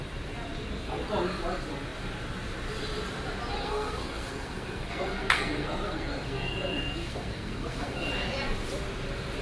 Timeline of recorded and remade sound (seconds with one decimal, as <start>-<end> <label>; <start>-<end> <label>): 0.0-3.6 recorded; 3.6-8.1 remade; 8.1-9.4 recorded